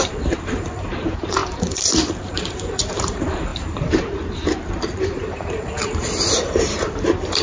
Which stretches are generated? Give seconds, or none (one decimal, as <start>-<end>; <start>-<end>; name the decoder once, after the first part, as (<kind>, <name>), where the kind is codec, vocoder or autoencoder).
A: 0.0-7.4 (vocoder, BigVGAN v2)